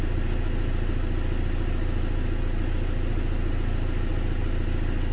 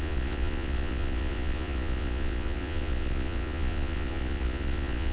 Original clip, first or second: first